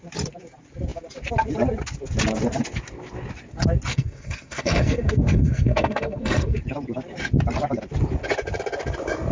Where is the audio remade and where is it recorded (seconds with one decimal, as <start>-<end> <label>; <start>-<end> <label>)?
0.0-3.9 recorded; 3.9-6.6 remade; 6.6-9.3 recorded